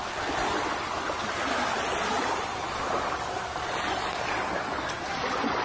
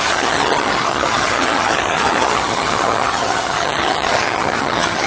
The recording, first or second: first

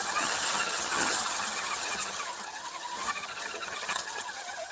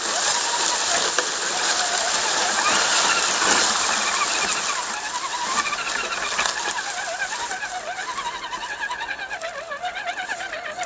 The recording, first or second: second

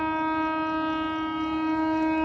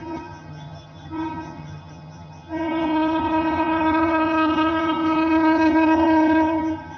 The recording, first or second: first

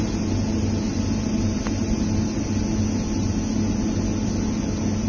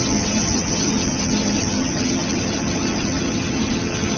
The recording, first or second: first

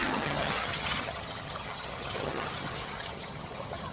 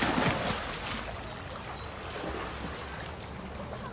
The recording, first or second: second